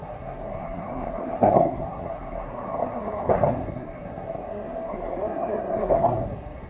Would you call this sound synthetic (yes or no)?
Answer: yes